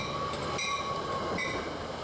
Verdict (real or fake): real